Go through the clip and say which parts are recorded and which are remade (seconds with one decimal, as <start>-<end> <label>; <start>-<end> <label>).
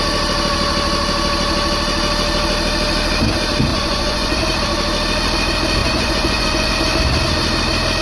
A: 0.0-3.7 recorded; 3.7-4.4 remade; 4.4-5.8 recorded; 5.8-6.7 remade; 6.7-8.0 recorded